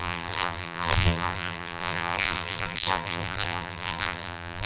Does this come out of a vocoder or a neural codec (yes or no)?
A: yes